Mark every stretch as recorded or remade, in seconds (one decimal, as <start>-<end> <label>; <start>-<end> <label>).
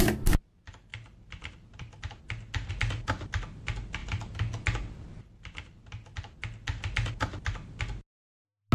0.0-8.7 recorded